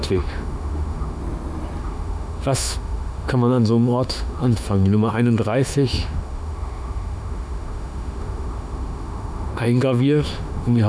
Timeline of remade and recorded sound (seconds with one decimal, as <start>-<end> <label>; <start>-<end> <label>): 0.0-1.2 remade; 1.2-1.8 recorded; 1.8-10.9 remade